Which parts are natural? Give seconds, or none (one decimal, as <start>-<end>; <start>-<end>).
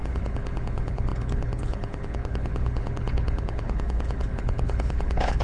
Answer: none